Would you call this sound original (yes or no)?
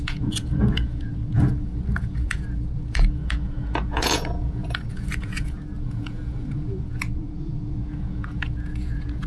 no